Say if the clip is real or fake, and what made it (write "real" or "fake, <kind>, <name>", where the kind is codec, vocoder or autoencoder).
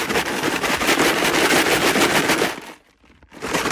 real